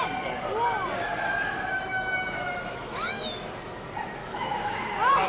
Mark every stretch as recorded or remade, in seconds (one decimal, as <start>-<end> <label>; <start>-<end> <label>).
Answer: 0.0-1.3 recorded; 1.3-3.4 remade; 3.4-4.2 recorded; 4.2-4.8 remade; 4.8-5.3 recorded